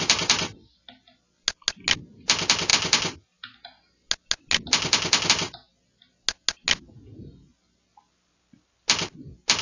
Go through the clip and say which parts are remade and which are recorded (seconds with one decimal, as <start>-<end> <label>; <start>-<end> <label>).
0.0-9.6 recorded